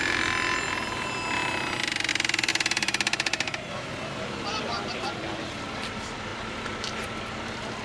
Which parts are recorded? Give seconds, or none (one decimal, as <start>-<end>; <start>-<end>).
1.4-2.1; 6.3-7.3